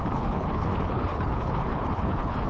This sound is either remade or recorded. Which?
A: remade